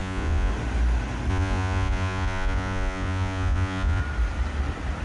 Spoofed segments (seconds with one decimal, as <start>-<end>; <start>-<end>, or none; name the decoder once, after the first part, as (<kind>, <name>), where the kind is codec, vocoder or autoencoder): 0.0-0.5 (vocoder, Vocos); 1.3-4.0